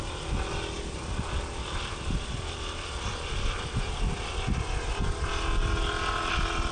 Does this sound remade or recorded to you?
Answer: recorded